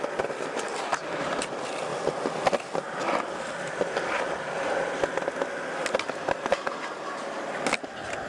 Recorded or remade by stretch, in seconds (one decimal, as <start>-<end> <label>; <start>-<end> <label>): 0.0-8.3 recorded